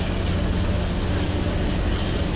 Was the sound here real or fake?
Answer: real